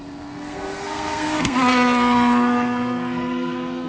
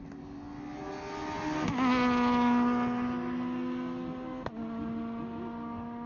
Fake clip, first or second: first